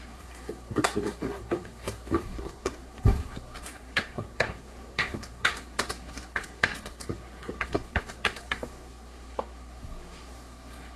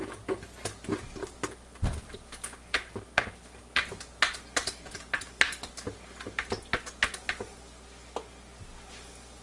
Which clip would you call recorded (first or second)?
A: second